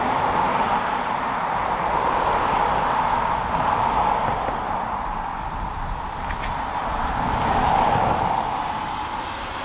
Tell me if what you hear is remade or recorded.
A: recorded